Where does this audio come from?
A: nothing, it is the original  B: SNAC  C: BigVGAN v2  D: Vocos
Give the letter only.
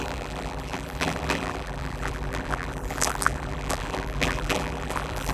C